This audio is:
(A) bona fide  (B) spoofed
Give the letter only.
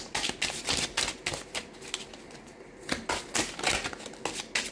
A